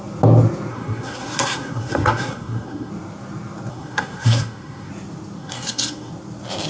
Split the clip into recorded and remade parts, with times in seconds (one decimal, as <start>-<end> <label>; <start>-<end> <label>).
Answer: 0.0-0.7 recorded; 0.7-2.9 remade; 2.9-3.7 recorded; 3.7-4.9 remade; 4.9-5.4 recorded; 5.4-6.1 remade; 6.1-6.7 recorded